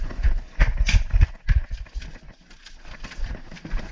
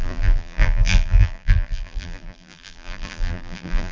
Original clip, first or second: first